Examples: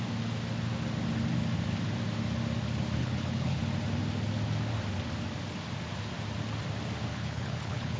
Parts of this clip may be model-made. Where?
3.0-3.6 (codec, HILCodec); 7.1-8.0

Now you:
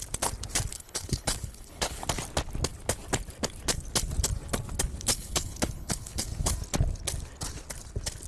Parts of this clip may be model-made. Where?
0.7-2.0 (codec, HILCodec); 5.1-6.5

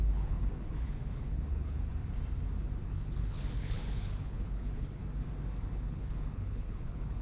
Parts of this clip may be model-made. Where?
0.0-1.9 (codec, HILCodec); 2.9-5.0; 5.7-7.2